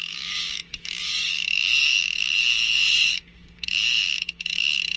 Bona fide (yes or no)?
no